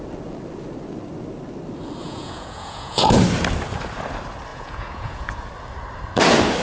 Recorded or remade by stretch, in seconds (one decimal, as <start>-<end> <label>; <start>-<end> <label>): 0.0-2.0 recorded; 2.0-3.2 remade; 3.2-4.5 recorded; 4.5-5.5 remade; 5.5-6.6 recorded